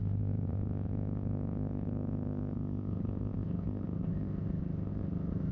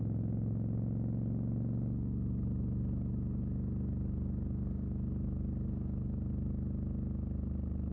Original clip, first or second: second